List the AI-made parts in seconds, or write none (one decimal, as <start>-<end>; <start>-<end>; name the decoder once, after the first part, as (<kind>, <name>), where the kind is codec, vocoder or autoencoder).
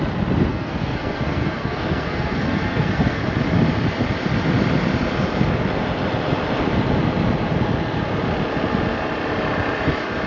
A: 0.5-3.2 (codec, SNAC)